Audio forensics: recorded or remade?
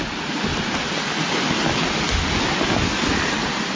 recorded